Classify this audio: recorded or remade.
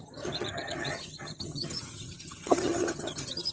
remade